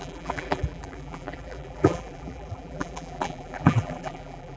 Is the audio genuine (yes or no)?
no